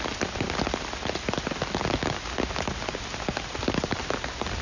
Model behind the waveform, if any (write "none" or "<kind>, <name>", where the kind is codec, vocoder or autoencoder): none